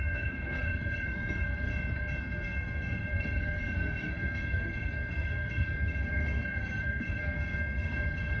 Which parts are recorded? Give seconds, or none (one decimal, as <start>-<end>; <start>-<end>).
1.7-2.2